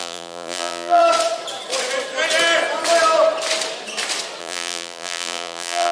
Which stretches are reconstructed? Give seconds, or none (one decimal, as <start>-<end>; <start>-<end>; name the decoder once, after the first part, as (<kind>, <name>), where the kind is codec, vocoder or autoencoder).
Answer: 0.0-1.0 (vocoder, BigVGAN v2); 4.4-5.9